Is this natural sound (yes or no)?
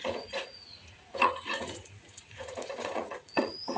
no